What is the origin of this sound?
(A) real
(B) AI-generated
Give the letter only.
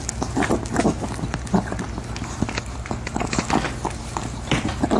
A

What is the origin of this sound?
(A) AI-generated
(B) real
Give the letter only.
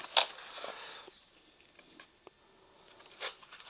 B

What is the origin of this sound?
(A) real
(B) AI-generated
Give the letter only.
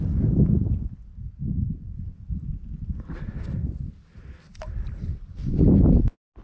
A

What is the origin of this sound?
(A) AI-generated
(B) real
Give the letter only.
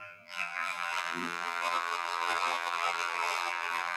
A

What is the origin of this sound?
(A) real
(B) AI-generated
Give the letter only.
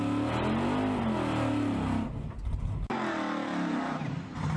A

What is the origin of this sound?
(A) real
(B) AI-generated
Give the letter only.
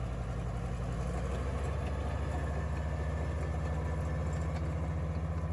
A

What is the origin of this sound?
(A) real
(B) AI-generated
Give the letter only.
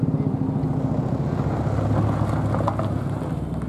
A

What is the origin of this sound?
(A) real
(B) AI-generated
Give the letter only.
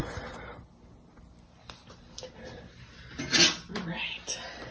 A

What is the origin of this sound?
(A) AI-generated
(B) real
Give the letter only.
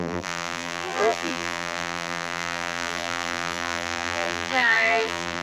A